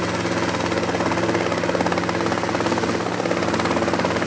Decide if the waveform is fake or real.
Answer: real